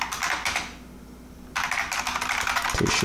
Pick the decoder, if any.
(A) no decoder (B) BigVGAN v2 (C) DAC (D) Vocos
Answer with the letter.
A